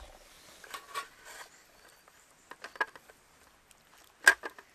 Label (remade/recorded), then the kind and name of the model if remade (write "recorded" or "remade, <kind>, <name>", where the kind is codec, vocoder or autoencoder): recorded